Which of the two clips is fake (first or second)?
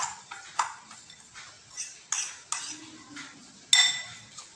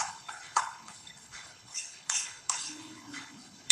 second